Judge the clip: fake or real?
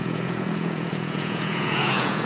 fake